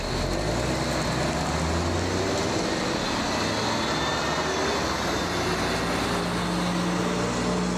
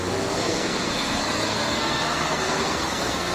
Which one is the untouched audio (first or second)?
first